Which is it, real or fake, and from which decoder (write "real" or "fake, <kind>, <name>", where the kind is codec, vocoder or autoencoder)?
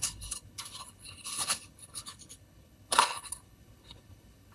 fake, codec, HILCodec